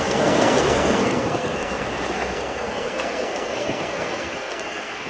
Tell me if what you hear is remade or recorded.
remade